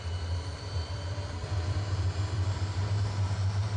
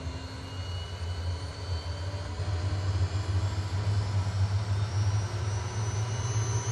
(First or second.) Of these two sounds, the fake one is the first